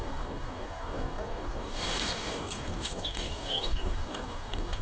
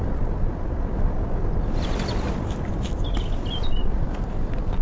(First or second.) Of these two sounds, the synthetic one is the first